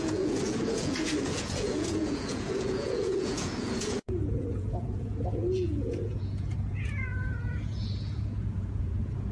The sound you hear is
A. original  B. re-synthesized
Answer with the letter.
B